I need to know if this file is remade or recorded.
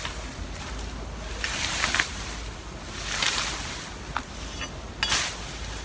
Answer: recorded